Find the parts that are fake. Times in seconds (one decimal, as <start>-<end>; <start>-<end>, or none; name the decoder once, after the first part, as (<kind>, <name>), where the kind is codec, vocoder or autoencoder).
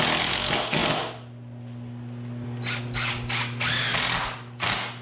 none